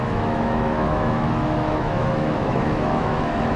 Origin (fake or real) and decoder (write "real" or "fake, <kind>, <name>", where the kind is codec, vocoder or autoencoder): fake, autoencoder, DAC-VAE